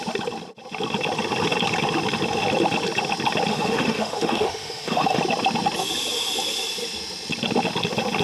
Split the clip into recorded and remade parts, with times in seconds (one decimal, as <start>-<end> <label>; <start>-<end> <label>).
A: 0.0-3.5 recorded; 3.5-5.2 remade; 5.2-8.2 recorded